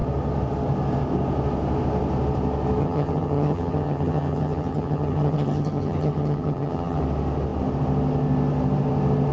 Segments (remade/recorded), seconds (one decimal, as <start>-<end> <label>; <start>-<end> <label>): 0.0-2.8 recorded; 2.8-7.0 remade; 7.0-9.3 recorded

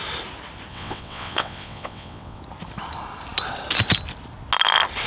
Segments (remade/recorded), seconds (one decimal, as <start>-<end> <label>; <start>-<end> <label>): 0.0-0.7 recorded; 0.7-2.4 remade; 2.4-5.1 recorded

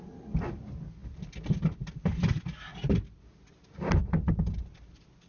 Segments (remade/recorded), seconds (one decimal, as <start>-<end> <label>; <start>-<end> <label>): 0.0-5.3 recorded

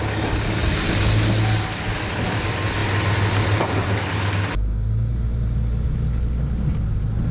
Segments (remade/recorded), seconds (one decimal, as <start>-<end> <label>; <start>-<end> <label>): 0.0-7.3 recorded

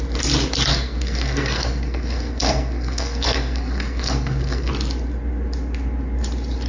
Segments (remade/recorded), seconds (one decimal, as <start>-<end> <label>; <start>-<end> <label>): 0.0-0.7 recorded; 0.7-4.7 remade; 4.7-6.7 recorded

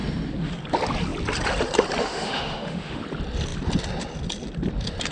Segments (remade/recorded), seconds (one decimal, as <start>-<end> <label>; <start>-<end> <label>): 0.0-2.0 recorded; 2.0-3.0 remade; 3.0-5.1 recorded

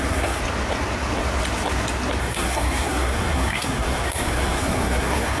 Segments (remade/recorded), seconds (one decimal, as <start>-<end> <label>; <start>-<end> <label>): 0.0-0.4 remade; 0.4-2.2 recorded; 2.2-5.4 remade

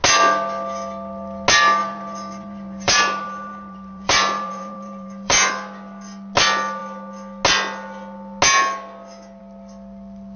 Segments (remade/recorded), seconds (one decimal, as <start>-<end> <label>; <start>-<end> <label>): 0.0-1.8 recorded; 1.8-5.5 remade; 5.5-10.4 recorded